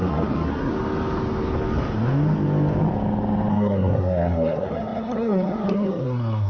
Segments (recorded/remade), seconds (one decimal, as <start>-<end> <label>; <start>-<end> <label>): 0.0-0.7 remade; 0.7-3.5 recorded; 3.5-6.5 remade